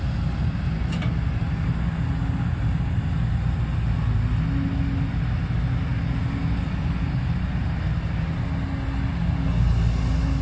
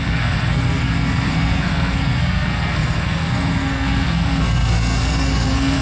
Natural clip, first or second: first